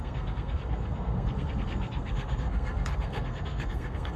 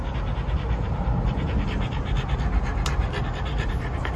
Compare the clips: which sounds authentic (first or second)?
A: second